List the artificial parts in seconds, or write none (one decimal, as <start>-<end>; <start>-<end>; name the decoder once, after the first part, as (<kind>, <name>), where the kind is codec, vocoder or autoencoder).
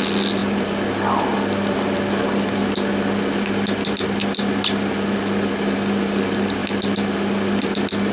none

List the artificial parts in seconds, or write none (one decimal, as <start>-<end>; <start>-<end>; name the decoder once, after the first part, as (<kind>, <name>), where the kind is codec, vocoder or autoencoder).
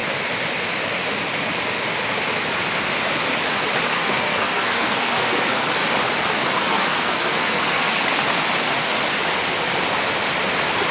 3.9-5.7 (codec, SNAC); 6.6-7.9